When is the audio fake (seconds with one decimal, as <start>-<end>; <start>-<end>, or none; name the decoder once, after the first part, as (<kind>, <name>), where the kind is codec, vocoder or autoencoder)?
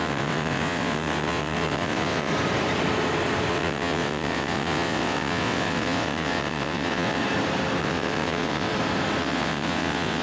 0.0-2.3 (vocoder, WaveNeXt); 3.5-7.2; 7.8-8.7; 9.2-10.2